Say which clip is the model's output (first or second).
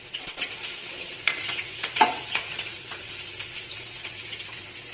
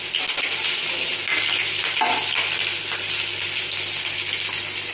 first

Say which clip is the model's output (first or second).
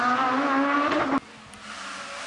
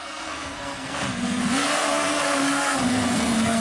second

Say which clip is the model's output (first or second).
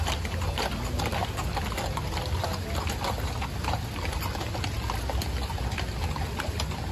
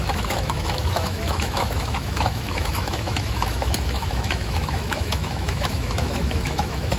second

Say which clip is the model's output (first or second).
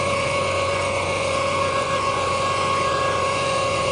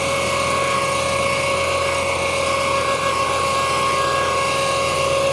first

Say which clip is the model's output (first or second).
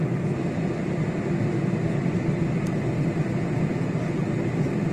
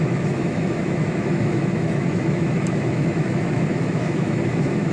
second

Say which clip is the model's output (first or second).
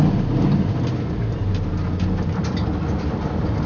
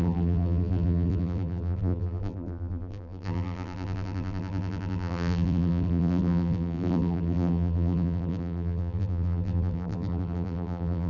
second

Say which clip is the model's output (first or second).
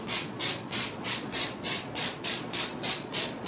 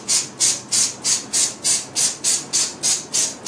first